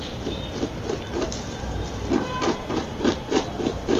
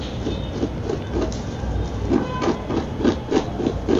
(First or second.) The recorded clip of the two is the second